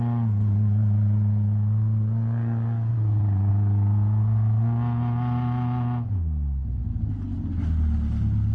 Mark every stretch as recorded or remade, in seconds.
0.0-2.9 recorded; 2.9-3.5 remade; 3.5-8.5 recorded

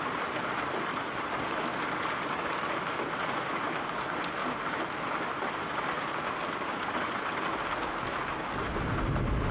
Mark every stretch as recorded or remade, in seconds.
0.0-9.5 recorded

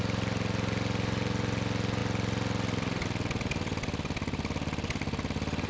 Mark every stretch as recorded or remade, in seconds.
0.0-5.7 recorded

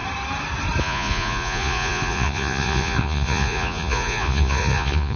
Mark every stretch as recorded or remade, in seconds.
0.0-0.8 recorded; 0.8-5.2 remade